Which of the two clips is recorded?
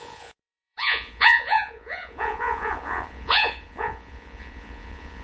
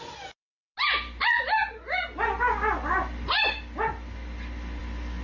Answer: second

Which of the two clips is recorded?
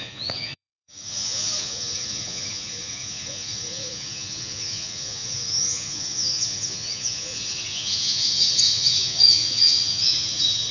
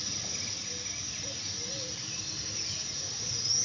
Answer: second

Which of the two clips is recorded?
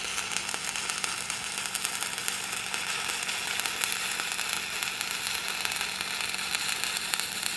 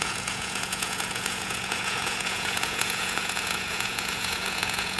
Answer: first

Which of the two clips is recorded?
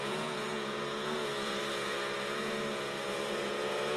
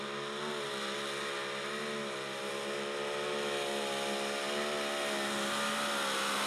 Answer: second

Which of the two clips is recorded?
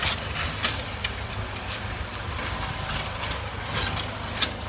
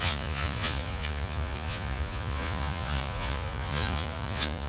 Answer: first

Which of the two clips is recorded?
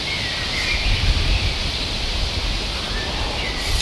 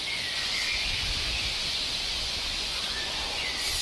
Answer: first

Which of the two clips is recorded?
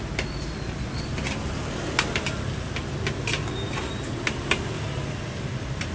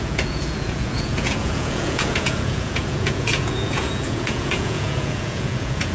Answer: first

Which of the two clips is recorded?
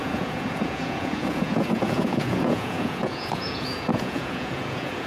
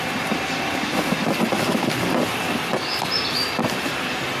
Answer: second